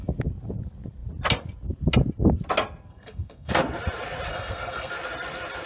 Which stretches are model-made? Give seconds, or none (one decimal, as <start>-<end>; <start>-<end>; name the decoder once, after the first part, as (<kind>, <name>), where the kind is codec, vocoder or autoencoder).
2.9-3.5 (codec, SNAC); 4.3-4.9